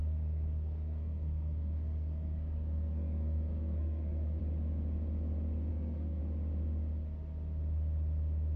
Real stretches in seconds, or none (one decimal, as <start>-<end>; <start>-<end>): 4.4-5.7; 6.2-8.6